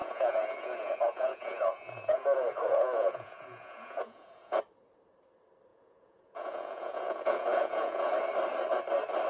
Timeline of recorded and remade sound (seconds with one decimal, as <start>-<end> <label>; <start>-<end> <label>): 0.0-4.6 remade; 4.6-5.7 recorded; 5.7-8.1 remade; 8.1-9.3 recorded